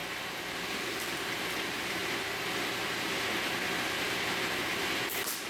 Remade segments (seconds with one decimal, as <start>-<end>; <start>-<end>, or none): 0.9-2.0; 4.5-5.5